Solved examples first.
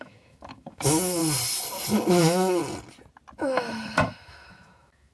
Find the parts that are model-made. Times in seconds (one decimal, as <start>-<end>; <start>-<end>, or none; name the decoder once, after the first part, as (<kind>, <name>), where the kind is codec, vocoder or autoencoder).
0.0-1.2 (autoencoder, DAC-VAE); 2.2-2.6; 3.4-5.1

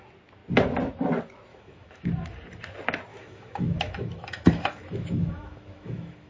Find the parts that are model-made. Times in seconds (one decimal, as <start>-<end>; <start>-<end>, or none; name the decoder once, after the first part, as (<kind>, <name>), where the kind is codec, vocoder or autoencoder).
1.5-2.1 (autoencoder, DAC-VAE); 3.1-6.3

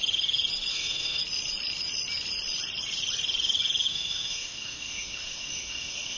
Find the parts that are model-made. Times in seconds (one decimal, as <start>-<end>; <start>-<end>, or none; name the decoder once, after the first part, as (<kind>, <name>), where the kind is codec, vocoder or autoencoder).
0.7-1.2 (autoencoder, DAC-VAE); 3.9-6.2

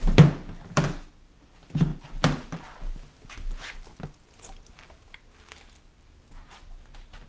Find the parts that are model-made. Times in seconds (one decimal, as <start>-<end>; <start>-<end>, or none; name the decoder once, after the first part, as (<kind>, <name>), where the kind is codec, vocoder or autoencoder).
none